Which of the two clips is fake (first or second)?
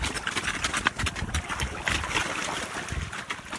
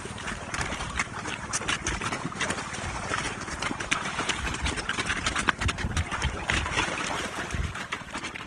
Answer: second